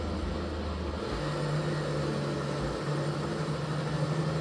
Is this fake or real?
real